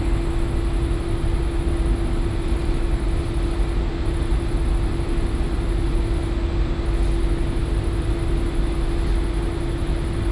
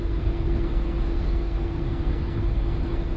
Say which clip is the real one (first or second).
first